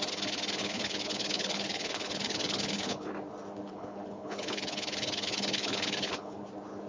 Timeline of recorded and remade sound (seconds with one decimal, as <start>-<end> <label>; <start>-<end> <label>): 0.0-0.6 recorded; 0.6-3.1 remade; 3.1-3.7 recorded; 3.7-6.4 remade; 6.4-6.9 recorded